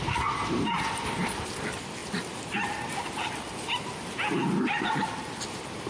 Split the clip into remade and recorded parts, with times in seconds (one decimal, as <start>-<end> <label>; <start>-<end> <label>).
0.0-5.9 recorded